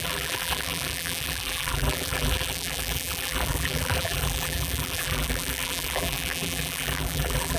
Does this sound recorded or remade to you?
remade